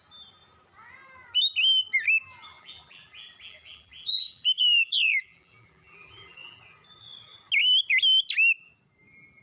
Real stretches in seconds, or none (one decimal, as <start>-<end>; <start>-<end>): 0.0-2.5; 6.6-9.4

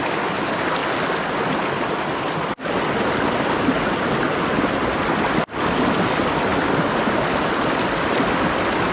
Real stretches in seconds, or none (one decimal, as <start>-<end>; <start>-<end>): 0.0-8.9

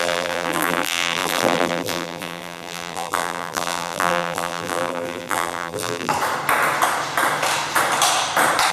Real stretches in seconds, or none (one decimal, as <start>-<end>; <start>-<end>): 6.1-8.7